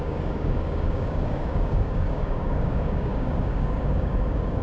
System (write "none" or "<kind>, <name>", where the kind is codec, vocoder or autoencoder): codec, DAC